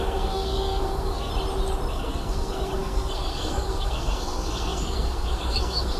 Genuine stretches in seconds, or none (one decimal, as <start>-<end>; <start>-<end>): 1.3-1.9